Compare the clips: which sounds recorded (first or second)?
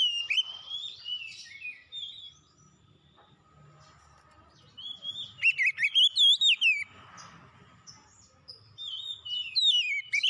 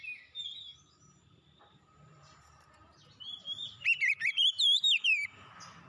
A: first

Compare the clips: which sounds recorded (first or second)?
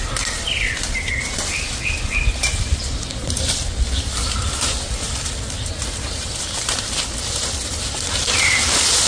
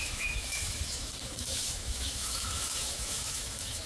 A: first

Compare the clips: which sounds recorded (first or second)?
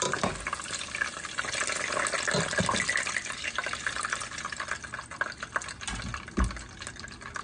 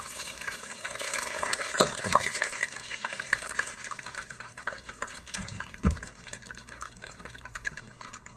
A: first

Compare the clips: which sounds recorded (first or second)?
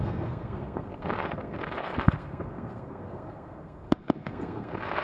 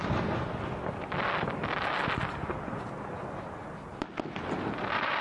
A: second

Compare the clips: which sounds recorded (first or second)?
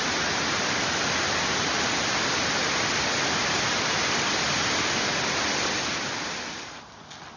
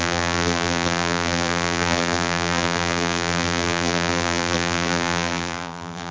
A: first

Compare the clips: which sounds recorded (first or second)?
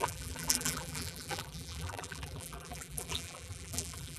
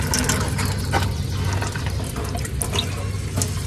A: second